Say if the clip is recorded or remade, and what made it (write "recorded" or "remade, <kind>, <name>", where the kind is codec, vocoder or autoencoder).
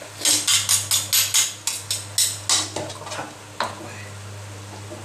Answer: recorded